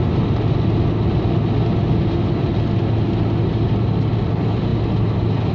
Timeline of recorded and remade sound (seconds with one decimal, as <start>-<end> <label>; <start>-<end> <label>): 0.0-5.5 recorded